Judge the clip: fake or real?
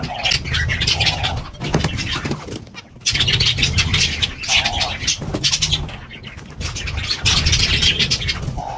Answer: real